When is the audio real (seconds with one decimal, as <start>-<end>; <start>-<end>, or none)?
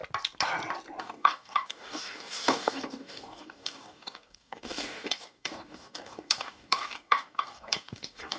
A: 0.0-1.0